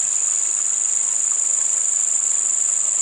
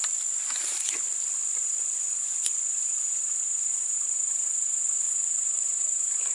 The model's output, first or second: second